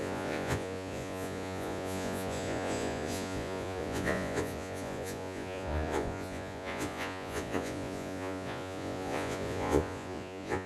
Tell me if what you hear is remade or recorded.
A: remade